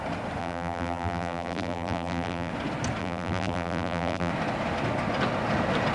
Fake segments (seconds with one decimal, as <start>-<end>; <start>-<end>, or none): 0.4-2.5; 3.0-4.3